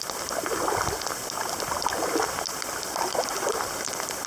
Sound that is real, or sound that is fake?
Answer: fake